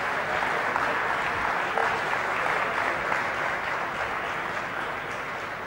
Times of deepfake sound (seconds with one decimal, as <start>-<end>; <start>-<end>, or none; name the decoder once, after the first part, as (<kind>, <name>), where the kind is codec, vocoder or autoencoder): none